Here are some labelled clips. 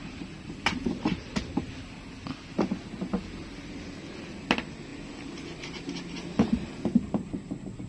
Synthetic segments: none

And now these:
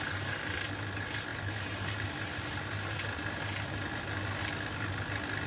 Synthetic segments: none

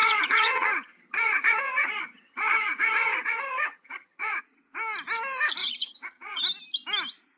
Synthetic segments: 0.0-4.4 (vocoder, HiFi-GAN); 5.6-6.4

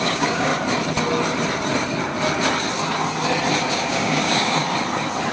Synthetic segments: 0.0-0.5 (codec, DAC); 3.7-4.6

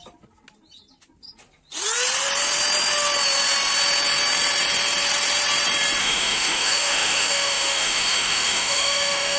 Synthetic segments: 6.0-9.4 (autoencoder, DAC-VAE)

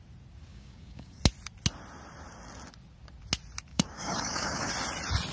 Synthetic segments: 0.5-1.2 (codec, DAC); 3.7-4.7

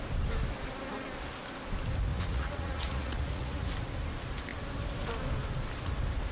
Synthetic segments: 2.1-3.7 (vocoder, Vocos)

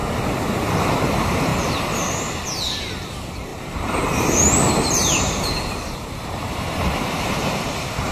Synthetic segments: 0.8-1.5 (vocoder, BigVGAN v2); 2.8-8.1